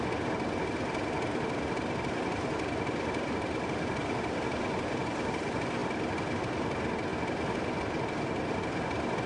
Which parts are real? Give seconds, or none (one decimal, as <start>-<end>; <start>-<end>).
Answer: 0.0-9.3

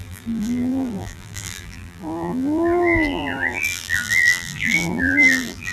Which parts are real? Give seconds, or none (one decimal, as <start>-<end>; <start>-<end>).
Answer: none

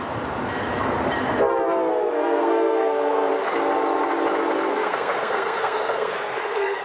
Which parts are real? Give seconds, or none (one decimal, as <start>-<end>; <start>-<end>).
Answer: 0.0-1.9; 3.3-4.7

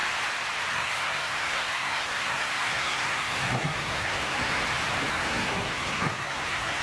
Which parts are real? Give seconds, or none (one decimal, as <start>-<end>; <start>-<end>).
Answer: 0.0-0.7; 4.6-5.1

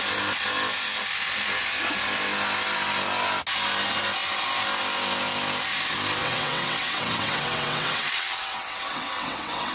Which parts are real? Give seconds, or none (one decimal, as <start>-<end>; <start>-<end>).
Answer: 0.0-6.2